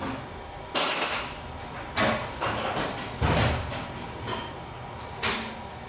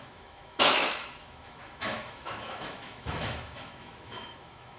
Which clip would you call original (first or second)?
first